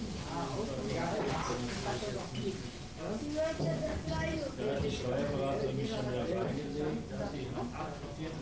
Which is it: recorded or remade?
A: recorded